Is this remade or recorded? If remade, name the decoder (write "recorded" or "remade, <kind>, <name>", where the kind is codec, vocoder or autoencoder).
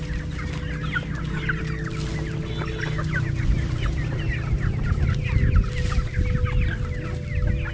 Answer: recorded